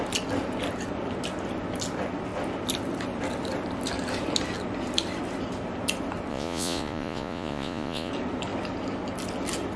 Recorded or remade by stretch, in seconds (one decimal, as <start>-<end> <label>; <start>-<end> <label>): 0.0-6.3 recorded; 6.3-8.1 remade; 8.1-9.8 recorded